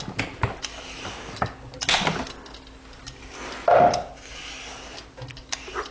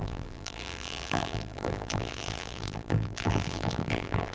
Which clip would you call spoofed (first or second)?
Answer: second